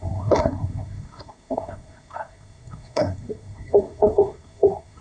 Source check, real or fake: fake